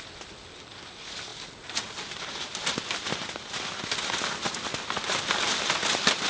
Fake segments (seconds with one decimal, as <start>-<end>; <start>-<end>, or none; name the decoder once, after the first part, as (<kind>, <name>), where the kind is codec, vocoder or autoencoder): none